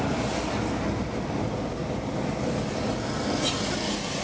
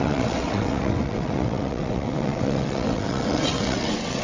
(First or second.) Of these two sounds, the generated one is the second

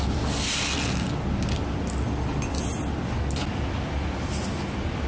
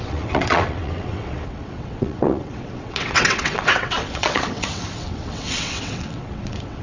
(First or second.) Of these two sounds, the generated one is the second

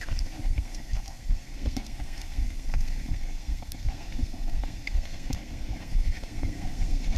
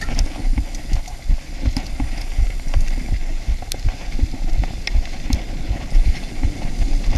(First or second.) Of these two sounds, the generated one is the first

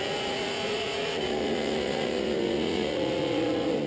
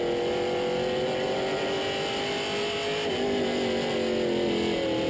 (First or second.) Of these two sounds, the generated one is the first